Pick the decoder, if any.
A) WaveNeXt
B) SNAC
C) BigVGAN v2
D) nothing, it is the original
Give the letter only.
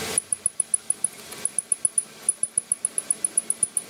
D